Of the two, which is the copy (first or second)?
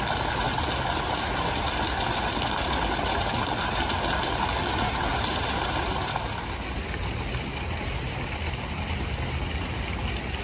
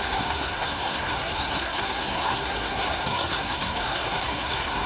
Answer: second